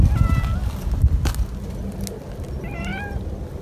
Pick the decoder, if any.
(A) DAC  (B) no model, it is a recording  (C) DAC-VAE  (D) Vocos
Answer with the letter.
B